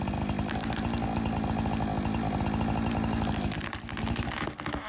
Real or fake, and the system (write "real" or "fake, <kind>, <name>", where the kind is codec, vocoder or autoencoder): real